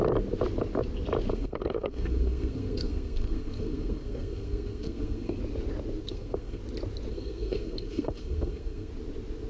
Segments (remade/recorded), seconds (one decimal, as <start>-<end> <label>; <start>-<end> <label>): 0.0-1.3 recorded; 1.3-5.4 remade; 5.4-6.0 recorded; 6.0-6.6 remade; 6.6-7.1 recorded; 7.1-8.9 remade; 8.9-9.5 recorded